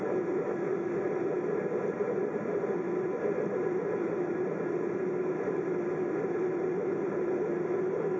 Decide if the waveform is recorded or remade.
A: recorded